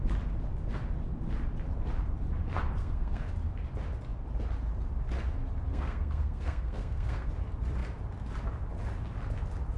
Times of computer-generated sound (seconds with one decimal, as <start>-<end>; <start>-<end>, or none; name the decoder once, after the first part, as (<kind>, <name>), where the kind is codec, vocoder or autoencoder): 2.8-3.3 (codec, SNAC); 5.7-7.3